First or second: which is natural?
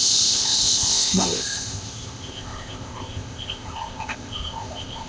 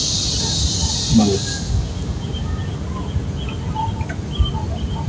second